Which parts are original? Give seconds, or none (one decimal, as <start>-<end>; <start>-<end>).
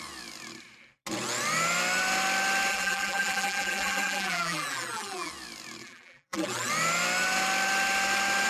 0.0-2.7; 5.3-5.8; 6.7-8.5